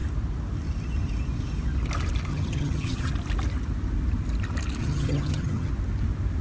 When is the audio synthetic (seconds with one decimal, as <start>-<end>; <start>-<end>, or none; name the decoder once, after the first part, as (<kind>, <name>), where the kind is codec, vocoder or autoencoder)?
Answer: 2.3-3.1 (vocoder, HiFi-GAN); 4.8-5.7